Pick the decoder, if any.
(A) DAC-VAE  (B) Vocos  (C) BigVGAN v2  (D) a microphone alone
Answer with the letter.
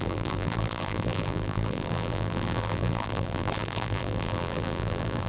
C